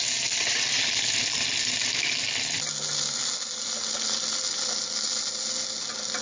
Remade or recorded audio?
recorded